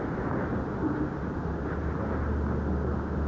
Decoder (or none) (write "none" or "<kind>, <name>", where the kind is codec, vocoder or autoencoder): none